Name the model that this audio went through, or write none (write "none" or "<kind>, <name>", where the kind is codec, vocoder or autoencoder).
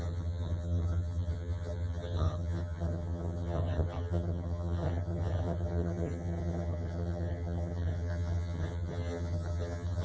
vocoder, HiFi-GAN